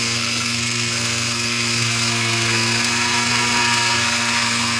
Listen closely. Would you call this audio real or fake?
fake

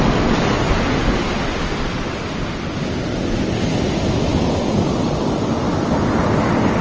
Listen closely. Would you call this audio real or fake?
real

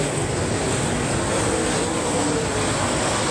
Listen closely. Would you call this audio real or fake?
real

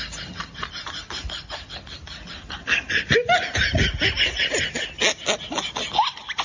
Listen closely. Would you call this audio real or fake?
real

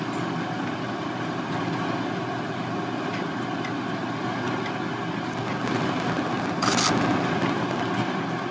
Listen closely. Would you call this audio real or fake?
real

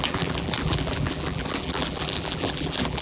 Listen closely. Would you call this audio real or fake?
fake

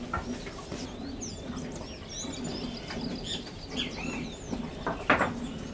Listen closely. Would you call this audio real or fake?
real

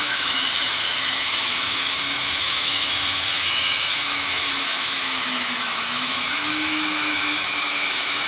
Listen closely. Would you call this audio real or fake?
fake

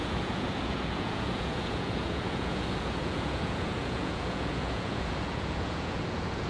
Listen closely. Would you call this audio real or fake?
fake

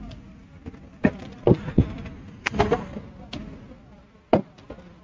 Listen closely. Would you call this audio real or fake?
real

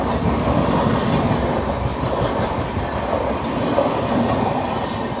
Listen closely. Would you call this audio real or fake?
fake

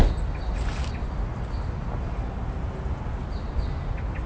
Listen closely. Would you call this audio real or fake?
real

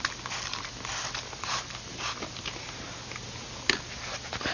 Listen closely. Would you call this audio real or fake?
real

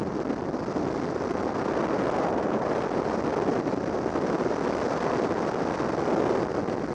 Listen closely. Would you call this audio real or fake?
real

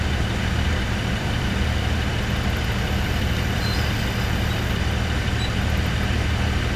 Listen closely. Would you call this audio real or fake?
fake